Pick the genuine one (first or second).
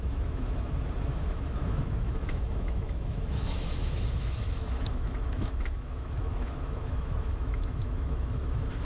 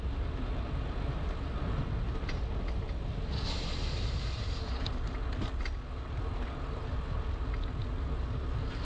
second